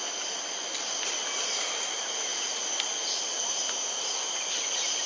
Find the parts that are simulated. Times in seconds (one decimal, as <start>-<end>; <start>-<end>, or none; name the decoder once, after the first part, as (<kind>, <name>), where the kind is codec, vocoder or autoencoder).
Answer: none